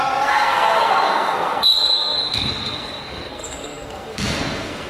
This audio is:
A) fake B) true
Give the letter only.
A